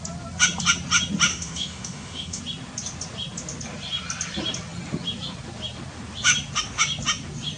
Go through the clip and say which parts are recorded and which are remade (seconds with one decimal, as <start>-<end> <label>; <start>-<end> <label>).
0.0-1.3 recorded; 1.3-2.4 remade; 2.4-7.6 recorded